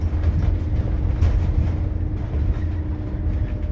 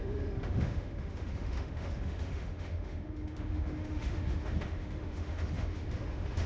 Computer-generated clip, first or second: second